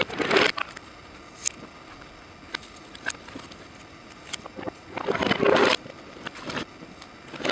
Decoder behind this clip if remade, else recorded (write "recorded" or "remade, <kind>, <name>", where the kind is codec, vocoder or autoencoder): recorded